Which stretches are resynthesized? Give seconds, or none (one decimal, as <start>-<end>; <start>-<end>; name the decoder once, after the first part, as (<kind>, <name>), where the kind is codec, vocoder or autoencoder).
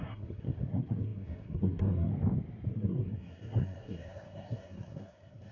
0.0-2.1 (codec, SNAC); 2.7-5.5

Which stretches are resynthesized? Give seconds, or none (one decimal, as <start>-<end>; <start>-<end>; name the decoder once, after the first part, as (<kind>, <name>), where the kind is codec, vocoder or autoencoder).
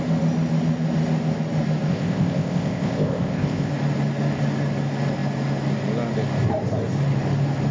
1.9-3.7 (codec, ZipCodec)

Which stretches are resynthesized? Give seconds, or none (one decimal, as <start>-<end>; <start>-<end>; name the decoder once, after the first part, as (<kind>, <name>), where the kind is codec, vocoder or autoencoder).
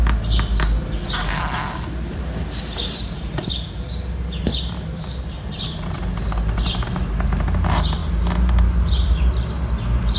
none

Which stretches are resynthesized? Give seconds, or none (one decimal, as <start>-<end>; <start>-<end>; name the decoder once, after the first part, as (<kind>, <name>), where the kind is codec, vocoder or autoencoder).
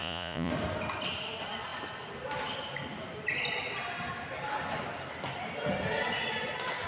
0.0-0.5 (vocoder, Vocos)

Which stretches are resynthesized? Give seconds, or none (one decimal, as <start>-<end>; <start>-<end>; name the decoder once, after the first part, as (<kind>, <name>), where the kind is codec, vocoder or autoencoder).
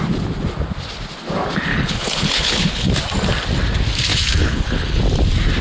1.7-2.9 (codec, HILCodec); 4.1-5.0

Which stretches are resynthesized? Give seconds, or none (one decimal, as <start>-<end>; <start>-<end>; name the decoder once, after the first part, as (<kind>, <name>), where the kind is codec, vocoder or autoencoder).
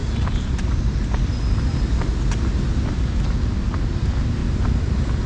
none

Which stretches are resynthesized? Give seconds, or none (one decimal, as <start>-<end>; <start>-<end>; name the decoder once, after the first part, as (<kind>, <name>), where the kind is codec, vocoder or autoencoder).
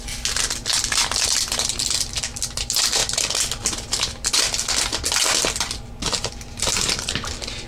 none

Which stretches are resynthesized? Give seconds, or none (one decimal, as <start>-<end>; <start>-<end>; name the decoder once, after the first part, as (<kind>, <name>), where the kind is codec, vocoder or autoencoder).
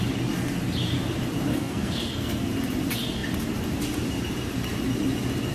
1.5-2.5 (codec, SNAC)